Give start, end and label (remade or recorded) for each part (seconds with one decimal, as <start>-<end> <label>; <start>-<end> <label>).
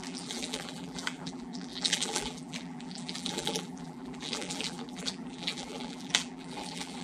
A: 0.0-7.0 remade